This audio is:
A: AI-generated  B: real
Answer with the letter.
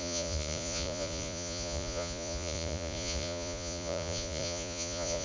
A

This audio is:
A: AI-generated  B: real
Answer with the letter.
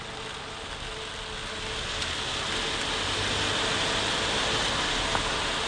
B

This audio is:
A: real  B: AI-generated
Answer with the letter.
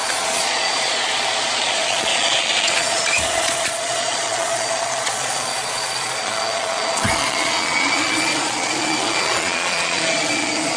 B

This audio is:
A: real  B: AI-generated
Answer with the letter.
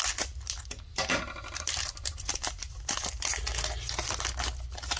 A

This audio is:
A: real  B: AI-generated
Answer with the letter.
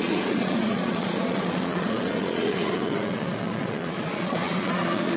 B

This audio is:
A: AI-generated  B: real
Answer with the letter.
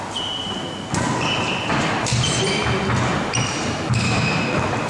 B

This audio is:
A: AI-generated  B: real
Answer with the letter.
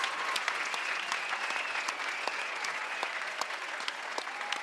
A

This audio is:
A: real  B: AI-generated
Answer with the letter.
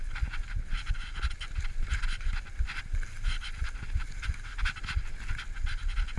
A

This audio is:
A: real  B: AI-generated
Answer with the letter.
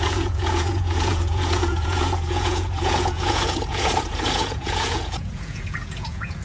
B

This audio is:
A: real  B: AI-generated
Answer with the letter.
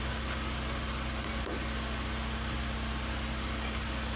A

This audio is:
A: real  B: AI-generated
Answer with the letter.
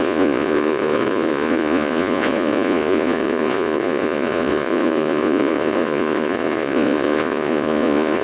B